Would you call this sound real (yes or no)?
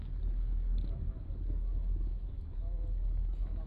no